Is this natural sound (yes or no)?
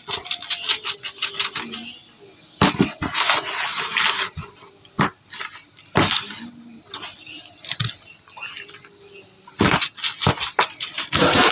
yes